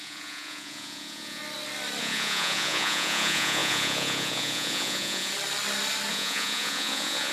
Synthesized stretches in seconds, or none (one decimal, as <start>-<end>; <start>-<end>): 0.0-1.4; 2.0-5.3; 6.1-7.3